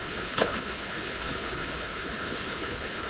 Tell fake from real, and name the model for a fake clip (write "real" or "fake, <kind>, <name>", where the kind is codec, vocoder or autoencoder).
fake, codec, HILCodec